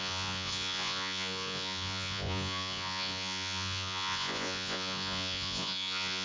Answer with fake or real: fake